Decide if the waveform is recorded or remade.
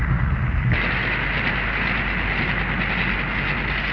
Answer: recorded